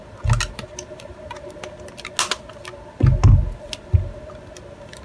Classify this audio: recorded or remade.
recorded